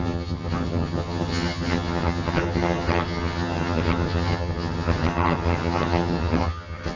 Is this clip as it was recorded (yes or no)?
no